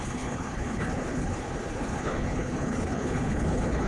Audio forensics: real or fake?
fake